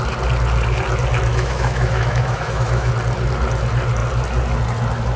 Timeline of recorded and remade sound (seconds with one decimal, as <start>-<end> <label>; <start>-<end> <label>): 0.0-1.3 recorded; 1.3-2.9 remade; 2.9-5.2 recorded